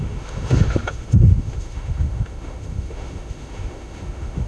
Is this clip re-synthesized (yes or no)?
yes